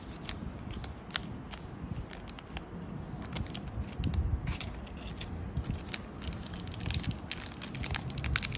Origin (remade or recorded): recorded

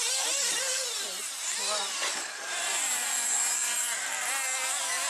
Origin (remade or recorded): recorded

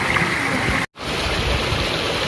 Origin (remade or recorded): recorded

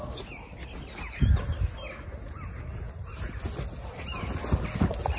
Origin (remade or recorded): recorded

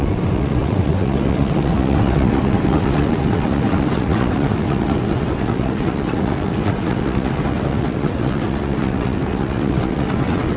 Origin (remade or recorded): remade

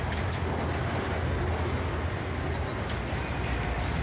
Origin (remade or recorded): recorded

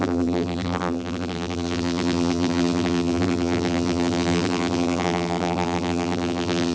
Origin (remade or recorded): remade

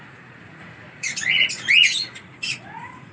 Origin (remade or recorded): remade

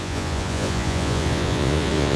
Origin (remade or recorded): remade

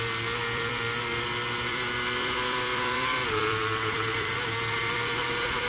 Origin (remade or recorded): remade